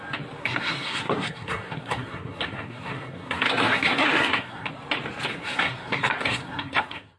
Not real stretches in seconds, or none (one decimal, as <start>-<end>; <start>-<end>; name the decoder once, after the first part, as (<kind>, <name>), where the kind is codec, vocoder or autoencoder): 0.4-4.7 (codec, SNAC); 5.3-7.2